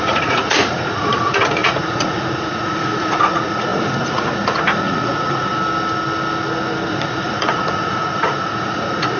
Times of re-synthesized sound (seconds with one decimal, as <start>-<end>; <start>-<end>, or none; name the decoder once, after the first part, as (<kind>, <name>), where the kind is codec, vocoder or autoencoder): 0.0-5.5 (vocoder, Vocos); 6.9-9.2